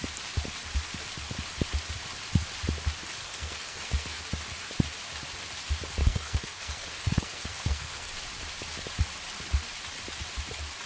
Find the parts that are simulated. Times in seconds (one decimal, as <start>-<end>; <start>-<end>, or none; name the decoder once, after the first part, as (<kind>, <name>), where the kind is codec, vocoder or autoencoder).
3.2-4.2 (codec, SNAC); 6.0-8.1